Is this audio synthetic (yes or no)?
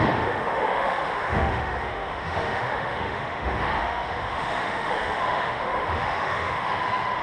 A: yes